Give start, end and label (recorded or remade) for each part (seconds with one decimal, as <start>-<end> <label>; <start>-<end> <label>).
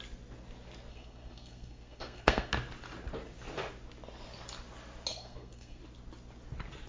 0.0-0.9 recorded; 0.9-2.5 remade; 2.5-5.1 recorded; 5.1-5.8 remade; 5.8-6.9 recorded